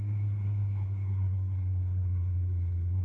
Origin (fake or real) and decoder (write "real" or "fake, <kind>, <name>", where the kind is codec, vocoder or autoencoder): fake, codec, SNAC